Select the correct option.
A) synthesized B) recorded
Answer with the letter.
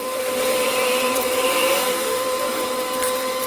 A